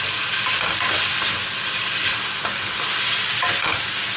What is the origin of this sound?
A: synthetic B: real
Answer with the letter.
B